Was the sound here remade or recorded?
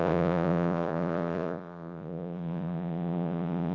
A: remade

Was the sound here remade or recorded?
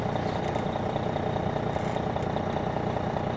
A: recorded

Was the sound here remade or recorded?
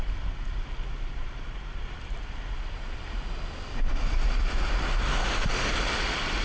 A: recorded